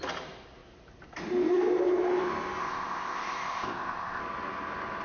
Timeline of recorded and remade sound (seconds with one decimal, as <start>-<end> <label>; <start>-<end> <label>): 0.0-2.6 recorded; 2.6-4.2 remade; 4.2-5.0 recorded